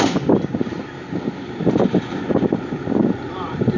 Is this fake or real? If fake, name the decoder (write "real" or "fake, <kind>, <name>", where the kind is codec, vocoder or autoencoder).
real